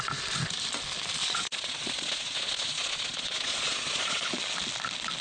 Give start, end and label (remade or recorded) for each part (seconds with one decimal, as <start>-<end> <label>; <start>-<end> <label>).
0.0-1.2 recorded; 1.2-4.3 remade; 4.3-5.2 recorded